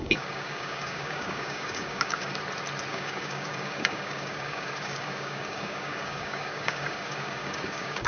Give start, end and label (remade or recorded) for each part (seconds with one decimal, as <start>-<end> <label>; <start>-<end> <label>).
0.0-2.3 remade; 2.3-2.9 recorded; 2.9-8.1 remade